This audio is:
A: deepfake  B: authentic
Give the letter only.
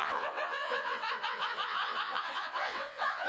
A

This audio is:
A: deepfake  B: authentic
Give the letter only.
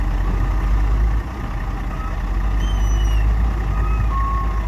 B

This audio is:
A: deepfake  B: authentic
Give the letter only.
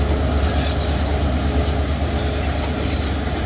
B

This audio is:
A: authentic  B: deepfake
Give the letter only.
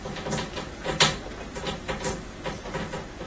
B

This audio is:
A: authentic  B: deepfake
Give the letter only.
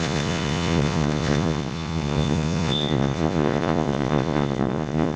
B